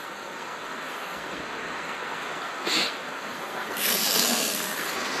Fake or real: fake